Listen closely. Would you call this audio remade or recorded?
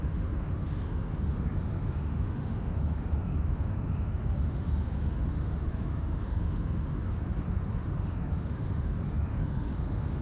remade